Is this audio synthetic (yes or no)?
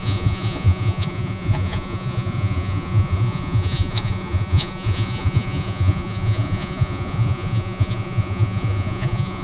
yes